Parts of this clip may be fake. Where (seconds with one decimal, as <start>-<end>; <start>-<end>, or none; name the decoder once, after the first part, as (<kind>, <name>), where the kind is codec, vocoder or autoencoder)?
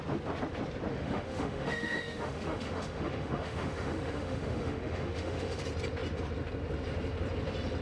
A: 0.9-5.6 (autoencoder, DAC-VAE)